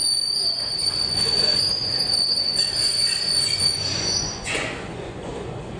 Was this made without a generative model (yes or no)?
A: no